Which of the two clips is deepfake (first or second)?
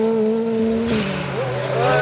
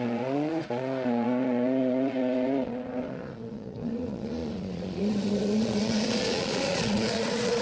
second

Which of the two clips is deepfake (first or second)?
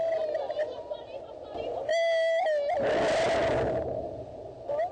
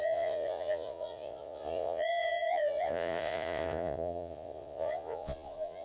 second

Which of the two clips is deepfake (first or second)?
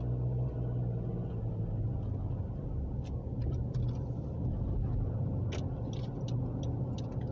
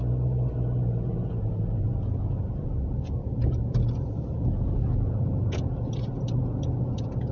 second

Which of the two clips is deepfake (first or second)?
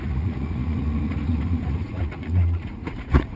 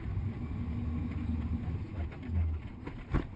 first